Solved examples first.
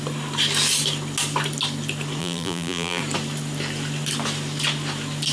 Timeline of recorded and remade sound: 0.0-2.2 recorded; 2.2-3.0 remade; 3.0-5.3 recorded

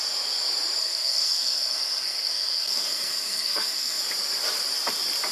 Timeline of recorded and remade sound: 0.0-0.8 recorded; 0.8-4.0 remade; 4.0-5.3 recorded

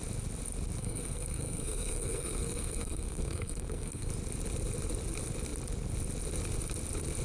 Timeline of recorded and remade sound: 0.0-0.8 recorded; 0.8-4.1 remade; 4.1-7.2 recorded

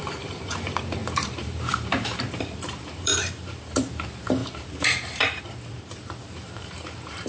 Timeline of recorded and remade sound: 0.0-7.3 remade